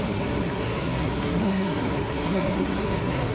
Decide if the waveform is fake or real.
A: fake